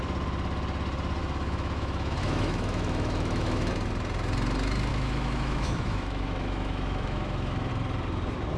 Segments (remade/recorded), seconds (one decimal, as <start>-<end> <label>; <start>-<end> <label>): 0.0-1.2 recorded; 1.2-3.7 remade; 3.7-4.9 recorded; 4.9-7.7 remade; 7.7-8.6 recorded